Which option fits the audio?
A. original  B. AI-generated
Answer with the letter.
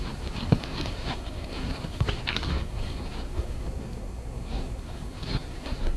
B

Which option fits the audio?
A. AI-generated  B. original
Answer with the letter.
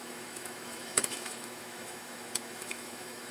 A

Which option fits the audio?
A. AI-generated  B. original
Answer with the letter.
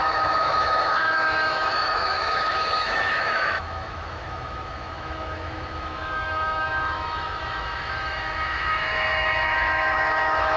A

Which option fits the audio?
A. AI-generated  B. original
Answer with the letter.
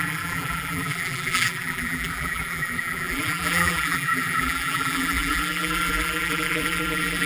A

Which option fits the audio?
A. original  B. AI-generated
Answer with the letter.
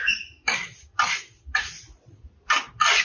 A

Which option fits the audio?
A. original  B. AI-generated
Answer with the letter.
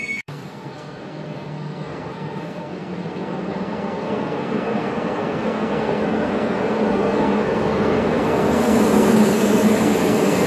B